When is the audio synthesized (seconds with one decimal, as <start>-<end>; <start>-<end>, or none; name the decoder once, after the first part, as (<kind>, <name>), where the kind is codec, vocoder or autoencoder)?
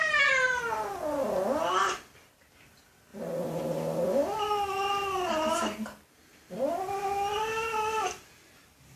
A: 0.0-0.6 (vocoder, BigVGAN v2); 3.1-3.6